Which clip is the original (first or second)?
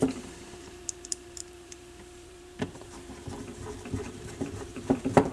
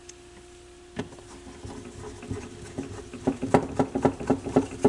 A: second